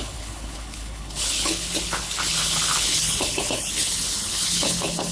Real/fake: fake